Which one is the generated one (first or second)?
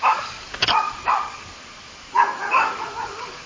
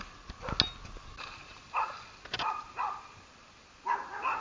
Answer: first